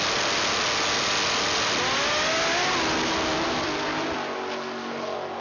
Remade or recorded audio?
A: recorded